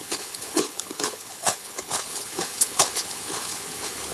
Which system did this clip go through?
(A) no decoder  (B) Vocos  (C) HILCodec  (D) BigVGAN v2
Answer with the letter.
C